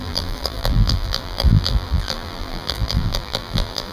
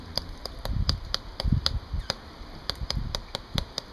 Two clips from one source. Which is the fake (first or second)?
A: first